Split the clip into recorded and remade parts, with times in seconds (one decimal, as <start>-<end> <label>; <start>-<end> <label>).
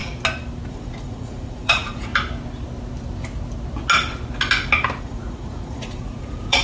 0.0-0.7 recorded; 0.7-2.1 remade; 2.1-5.0 recorded; 5.0-6.6 remade